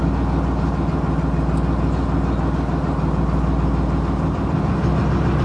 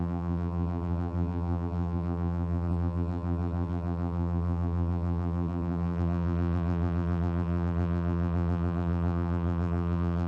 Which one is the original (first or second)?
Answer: first